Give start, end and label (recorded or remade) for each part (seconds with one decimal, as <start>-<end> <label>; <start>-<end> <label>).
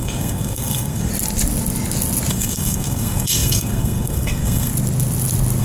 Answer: 0.0-1.1 remade; 1.1-2.3 recorded; 2.3-4.7 remade; 4.7-5.6 recorded